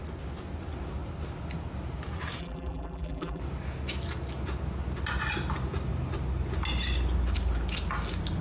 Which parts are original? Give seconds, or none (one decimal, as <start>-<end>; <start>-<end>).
0.0-2.4; 3.4-8.4